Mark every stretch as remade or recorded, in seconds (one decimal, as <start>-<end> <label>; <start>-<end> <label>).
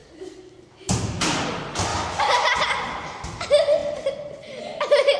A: 0.0-5.2 recorded